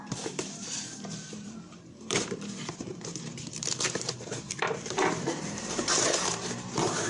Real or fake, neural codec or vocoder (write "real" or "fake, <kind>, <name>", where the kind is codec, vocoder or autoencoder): fake, vocoder, BigVGAN v2